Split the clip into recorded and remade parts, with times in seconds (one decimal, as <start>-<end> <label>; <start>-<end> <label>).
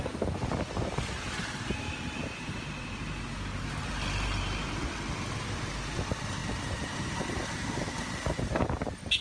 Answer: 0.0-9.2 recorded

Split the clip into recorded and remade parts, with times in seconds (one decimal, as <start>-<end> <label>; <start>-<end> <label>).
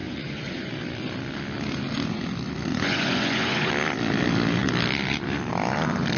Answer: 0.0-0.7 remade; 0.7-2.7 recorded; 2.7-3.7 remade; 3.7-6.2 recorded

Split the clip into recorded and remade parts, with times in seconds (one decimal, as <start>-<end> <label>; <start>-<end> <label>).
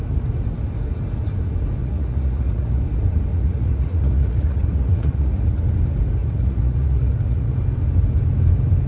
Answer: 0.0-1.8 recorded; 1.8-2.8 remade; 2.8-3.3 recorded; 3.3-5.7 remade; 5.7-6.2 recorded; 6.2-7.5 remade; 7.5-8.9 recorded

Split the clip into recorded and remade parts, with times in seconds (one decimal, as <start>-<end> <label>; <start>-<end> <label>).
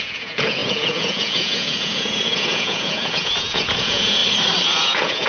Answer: 0.0-4.2 remade; 4.2-4.8 recorded; 4.8-5.3 remade